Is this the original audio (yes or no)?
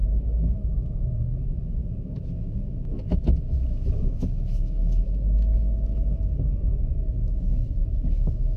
no